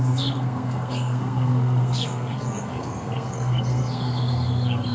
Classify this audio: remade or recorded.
remade